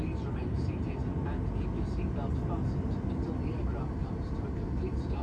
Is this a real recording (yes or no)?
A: yes